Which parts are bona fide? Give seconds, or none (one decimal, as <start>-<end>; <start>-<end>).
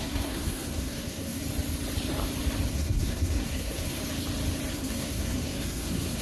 1.4-2.7; 4.0-4.7